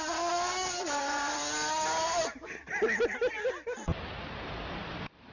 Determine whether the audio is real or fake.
real